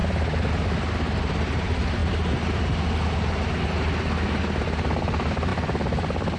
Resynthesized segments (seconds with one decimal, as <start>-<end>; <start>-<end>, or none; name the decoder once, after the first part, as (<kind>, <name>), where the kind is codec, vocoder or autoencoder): none